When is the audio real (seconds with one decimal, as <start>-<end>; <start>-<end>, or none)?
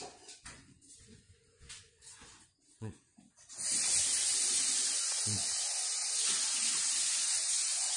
3.1-5.0; 5.4-7.1